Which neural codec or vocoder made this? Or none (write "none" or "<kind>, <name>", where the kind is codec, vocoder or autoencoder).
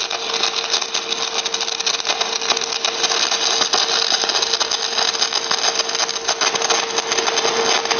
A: none